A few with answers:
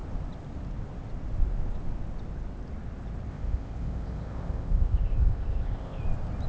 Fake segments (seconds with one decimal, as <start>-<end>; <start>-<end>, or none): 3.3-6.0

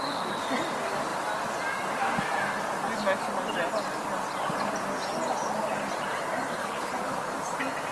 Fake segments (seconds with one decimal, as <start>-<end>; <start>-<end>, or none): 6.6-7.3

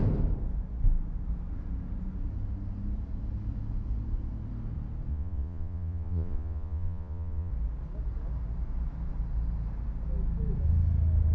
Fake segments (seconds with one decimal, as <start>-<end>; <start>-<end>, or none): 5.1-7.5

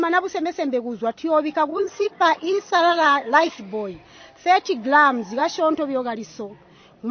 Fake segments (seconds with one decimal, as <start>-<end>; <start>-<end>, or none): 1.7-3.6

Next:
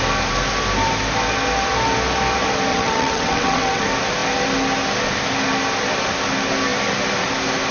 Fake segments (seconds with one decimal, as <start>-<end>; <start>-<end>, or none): 2.7-3.8

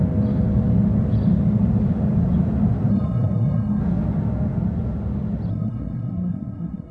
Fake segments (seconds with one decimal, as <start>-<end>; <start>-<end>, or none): 2.9-3.8; 5.5-6.9

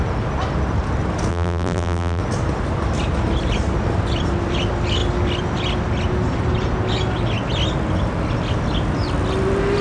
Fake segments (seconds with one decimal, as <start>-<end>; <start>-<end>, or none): 1.3-2.2